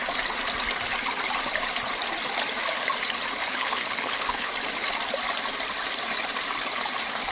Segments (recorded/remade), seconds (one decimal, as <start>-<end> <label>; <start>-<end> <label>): 0.0-3.4 recorded; 3.4-4.5 remade; 4.5-7.3 recorded